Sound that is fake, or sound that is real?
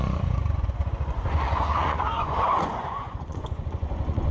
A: fake